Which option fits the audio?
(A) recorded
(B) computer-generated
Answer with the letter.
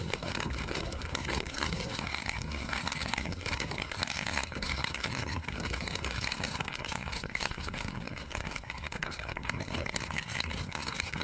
B